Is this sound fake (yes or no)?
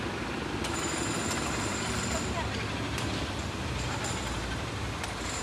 no